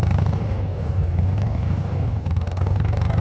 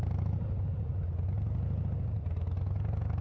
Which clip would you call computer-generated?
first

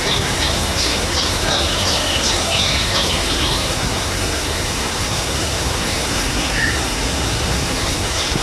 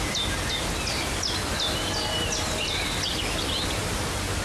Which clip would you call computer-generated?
first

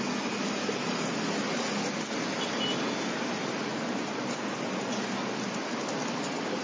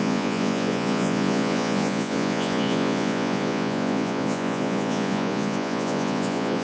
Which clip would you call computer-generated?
second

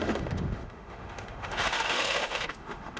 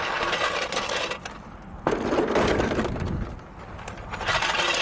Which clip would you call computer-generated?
first